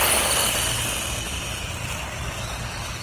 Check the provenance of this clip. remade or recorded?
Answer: recorded